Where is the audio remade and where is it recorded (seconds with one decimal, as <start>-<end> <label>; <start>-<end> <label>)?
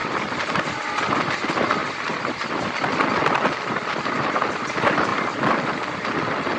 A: 0.0-0.7 remade; 0.7-1.8 recorded; 1.8-3.1 remade; 3.1-5.1 recorded; 5.1-5.8 remade; 5.8-6.6 recorded